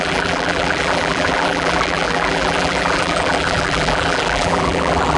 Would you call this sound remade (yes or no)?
yes